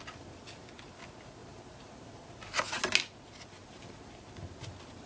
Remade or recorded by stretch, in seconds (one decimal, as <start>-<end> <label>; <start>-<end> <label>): 0.0-1.4 recorded; 1.4-2.6 remade; 2.6-3.6 recorded; 3.6-4.5 remade; 4.5-5.1 recorded